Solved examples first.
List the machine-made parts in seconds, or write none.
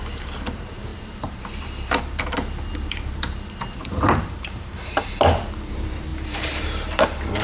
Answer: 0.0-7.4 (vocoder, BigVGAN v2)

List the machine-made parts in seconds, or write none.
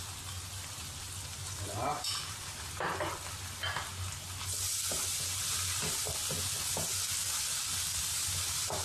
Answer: 1.3-2.7 (vocoder, BigVGAN v2)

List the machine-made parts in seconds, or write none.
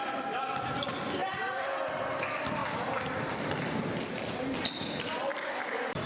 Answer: 1.2-2.1 (vocoder, BigVGAN v2); 2.6-6.1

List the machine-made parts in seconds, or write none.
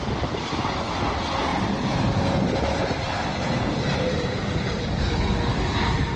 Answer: 1.5-5.2 (vocoder, BigVGAN v2)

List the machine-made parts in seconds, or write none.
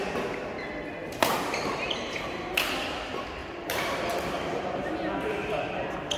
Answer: 1.0-2.7 (vocoder, BigVGAN v2); 3.4-4.0